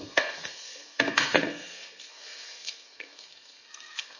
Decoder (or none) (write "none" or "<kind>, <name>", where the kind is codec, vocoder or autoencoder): codec, SNAC